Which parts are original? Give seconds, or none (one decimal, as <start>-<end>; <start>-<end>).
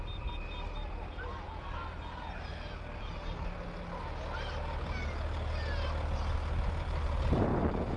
0.0-8.0